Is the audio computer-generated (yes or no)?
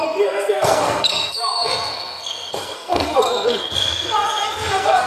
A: yes